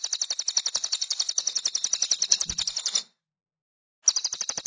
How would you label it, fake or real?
real